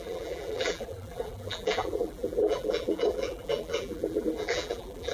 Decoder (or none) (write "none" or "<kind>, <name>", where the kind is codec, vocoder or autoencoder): vocoder, BigVGAN v2